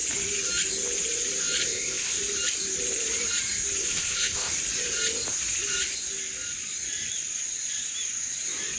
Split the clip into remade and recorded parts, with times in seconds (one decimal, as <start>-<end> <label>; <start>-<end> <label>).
0.0-1.6 recorded; 1.6-2.2 remade; 2.2-3.8 recorded; 3.8-4.5 remade; 4.5-8.8 recorded